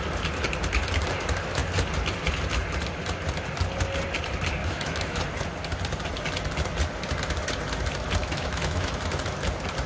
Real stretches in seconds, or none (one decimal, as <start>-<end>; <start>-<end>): 0.0-4.6; 5.2-8.2; 9.0-9.9